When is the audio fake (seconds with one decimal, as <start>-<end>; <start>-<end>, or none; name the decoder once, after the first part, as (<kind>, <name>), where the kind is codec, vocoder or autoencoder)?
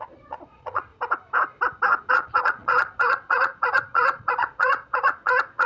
0.0-0.9 (vocoder, Vocos); 2.1-5.7